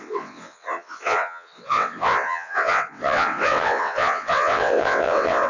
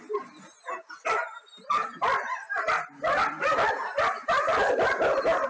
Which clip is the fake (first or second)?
first